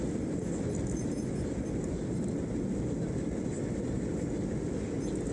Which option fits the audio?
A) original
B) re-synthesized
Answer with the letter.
A